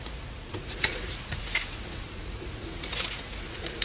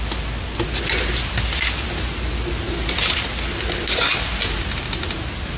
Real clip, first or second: second